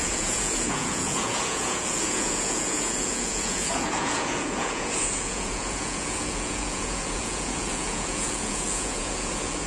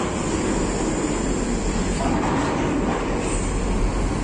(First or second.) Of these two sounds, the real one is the second